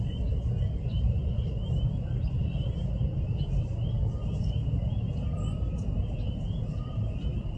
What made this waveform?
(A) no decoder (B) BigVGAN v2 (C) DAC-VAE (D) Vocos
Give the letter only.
A